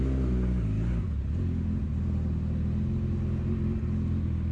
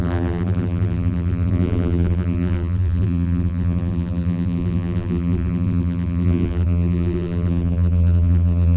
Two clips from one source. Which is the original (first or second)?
first